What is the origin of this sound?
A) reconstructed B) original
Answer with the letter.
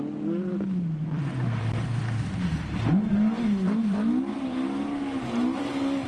B